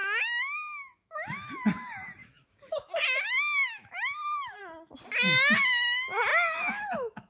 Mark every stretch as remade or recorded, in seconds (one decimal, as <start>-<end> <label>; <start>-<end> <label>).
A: 0.0-1.5 remade; 1.5-2.2 recorded; 2.2-4.6 remade; 4.6-6.3 recorded; 6.3-7.3 remade